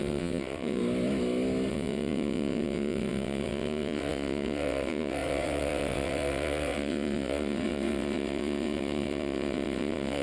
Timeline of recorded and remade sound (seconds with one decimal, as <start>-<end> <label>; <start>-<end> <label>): 0.0-0.8 remade; 0.8-1.7 recorded; 1.7-10.2 remade